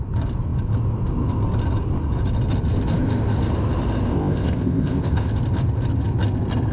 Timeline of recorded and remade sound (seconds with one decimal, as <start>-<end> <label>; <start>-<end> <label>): 0.0-4.1 recorded; 4.1-5.3 remade; 5.3-6.7 recorded